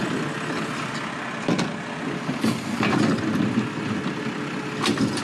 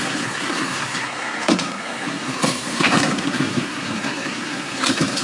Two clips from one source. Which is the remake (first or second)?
second